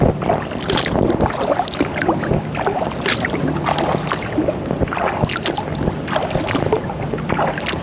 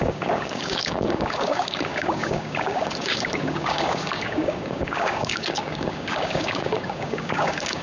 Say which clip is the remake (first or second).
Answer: second